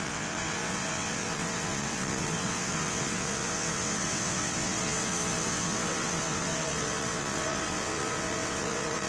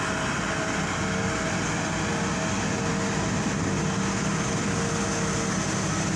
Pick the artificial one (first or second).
first